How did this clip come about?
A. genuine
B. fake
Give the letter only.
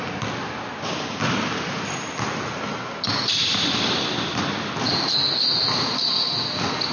A